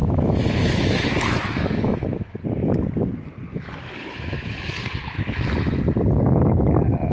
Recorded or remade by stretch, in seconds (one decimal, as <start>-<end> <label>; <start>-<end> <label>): 0.0-2.4 remade; 2.4-3.5 recorded; 3.5-4.6 remade; 4.6-7.1 recorded